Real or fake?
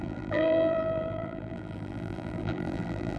fake